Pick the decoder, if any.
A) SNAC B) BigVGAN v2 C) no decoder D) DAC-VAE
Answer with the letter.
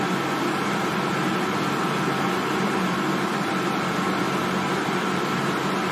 B